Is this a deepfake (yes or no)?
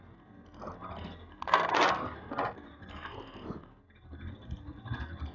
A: no